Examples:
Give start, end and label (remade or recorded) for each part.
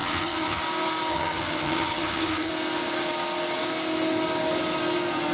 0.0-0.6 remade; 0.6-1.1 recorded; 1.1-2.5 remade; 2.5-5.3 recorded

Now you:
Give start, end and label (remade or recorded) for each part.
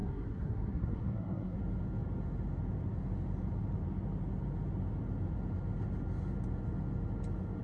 0.0-1.6 remade; 1.6-7.6 recorded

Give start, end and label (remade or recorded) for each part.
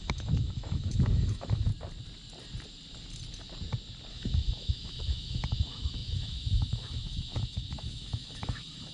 0.0-1.7 remade; 1.7-4.1 recorded; 4.1-8.9 remade